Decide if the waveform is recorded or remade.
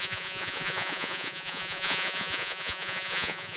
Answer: remade